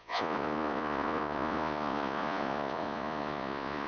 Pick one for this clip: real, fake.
fake